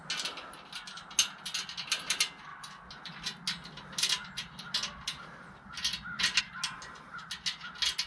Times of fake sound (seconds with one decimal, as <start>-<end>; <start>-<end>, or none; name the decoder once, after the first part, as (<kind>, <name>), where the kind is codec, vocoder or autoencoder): none

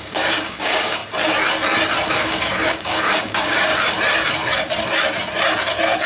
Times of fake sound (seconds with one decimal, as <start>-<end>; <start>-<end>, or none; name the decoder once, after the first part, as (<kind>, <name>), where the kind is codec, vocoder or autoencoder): 0.0-1.0 (codec, DAC); 2.1-3.7

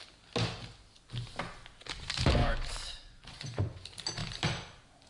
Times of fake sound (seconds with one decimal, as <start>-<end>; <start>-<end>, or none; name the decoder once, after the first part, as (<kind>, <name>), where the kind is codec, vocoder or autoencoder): 2.4-3.8 (vocoder, Vocos)